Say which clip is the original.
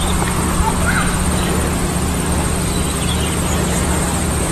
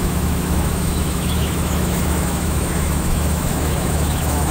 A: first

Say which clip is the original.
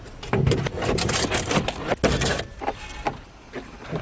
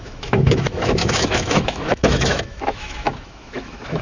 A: first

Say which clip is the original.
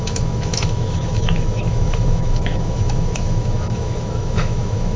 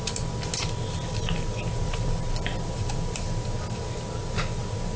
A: second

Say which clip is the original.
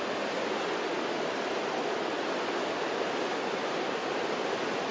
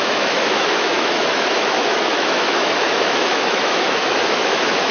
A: first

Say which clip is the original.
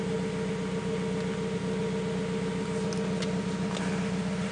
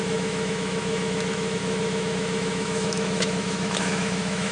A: first